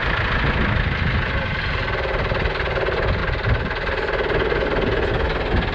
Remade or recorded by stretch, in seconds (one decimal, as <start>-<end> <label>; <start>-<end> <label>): 0.0-5.7 recorded